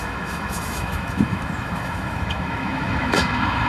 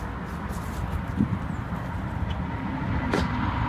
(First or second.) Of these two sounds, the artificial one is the first